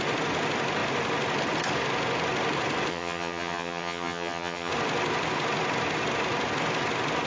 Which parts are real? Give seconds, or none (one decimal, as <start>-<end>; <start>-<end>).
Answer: 0.0-2.9; 4.7-7.3